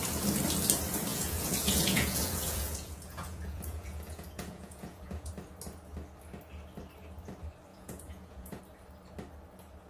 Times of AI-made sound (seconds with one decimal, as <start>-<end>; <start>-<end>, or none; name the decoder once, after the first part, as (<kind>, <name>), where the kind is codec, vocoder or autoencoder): 1.1-5.3 (vocoder, Vocos); 7.7-8.6